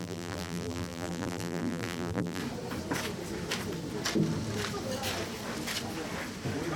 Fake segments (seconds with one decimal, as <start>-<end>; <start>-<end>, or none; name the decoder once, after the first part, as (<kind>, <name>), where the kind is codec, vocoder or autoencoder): 0.0-2.4 (vocoder, BigVGAN v2)